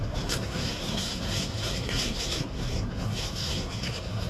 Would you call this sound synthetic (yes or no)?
yes